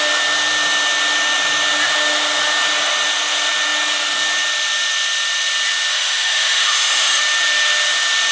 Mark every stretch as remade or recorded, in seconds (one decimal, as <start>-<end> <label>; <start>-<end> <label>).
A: 0.0-5.9 recorded; 5.9-7.2 remade; 7.2-8.3 recorded